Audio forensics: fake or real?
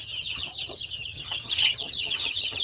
fake